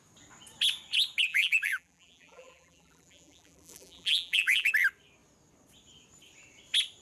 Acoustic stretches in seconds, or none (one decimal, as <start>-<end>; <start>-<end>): 0.0-1.3; 4.7-7.0